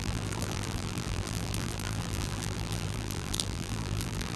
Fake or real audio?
fake